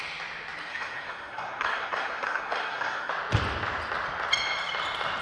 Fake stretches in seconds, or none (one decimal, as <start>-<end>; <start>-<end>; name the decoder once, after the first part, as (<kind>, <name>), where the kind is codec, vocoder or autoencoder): 0.7-3.1 (codec, SNAC)